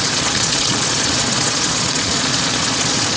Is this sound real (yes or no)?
no